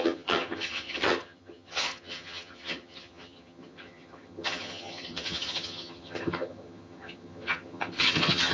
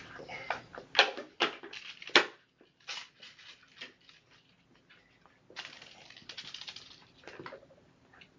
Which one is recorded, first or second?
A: second